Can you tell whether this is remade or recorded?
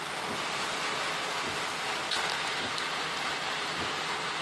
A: recorded